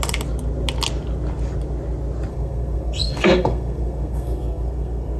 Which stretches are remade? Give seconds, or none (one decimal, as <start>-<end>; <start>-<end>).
2.3-5.2